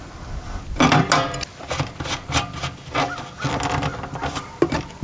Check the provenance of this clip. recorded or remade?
recorded